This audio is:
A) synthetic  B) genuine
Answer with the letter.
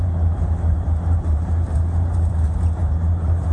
A